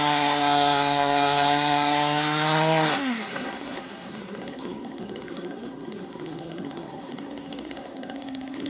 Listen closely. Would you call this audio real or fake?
fake